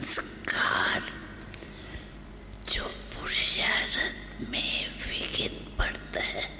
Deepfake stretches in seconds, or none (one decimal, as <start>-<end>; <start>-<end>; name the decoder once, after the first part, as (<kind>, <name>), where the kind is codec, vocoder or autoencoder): 0.0-2.9 (vocoder, BigVGAN v2); 5.8-6.6